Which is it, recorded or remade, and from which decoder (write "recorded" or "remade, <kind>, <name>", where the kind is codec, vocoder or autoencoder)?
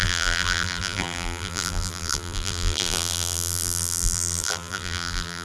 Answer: remade, vocoder, BigVGAN v2